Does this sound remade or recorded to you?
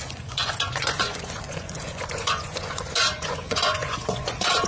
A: remade